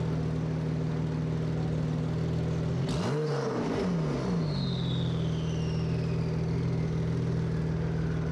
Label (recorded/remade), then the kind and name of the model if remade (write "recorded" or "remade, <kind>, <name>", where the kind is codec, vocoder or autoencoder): recorded